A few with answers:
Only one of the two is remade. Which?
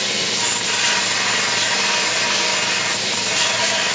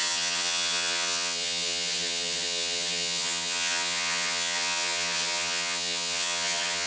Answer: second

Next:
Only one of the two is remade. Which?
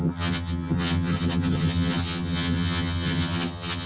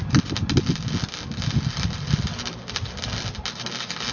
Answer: first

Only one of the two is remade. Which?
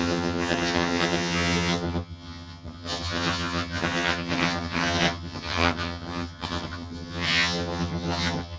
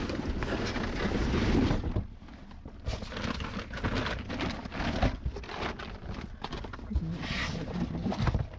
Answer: first